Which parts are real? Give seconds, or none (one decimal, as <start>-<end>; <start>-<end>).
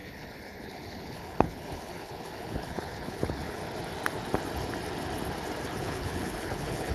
3.6-5.8